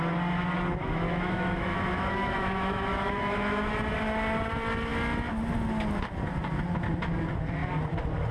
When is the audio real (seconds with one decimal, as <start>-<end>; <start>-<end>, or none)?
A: 0.0-0.8; 3.7-8.3